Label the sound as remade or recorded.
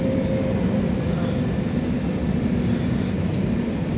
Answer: recorded